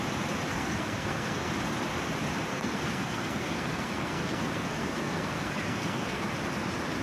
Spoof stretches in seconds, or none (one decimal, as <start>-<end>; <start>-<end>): 0.5-1.5; 2.5-6.3